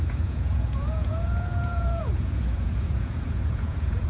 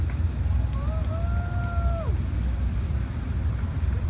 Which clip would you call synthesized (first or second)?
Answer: first